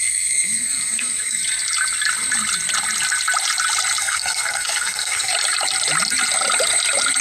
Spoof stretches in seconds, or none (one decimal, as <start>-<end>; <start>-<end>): 0.0-1.4; 4.0-5.3